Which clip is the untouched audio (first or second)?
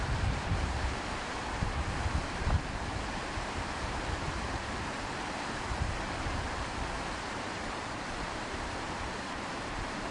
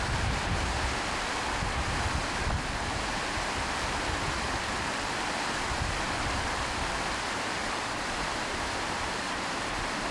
second